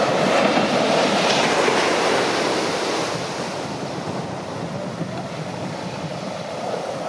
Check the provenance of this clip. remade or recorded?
recorded